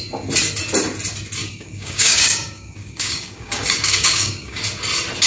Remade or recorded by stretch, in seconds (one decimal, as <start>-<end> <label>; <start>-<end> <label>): 0.0-1.4 recorded; 1.4-4.6 remade; 4.6-5.3 recorded